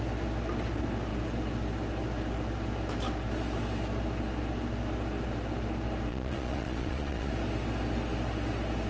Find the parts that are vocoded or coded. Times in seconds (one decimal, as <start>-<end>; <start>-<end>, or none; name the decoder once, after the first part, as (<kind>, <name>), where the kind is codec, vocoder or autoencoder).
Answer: 6.1-7.3 (vocoder, Vocos)